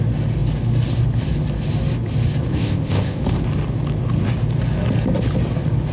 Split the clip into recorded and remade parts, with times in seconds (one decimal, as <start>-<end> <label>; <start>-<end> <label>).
0.0-2.5 recorded; 2.5-3.2 remade; 3.2-5.9 recorded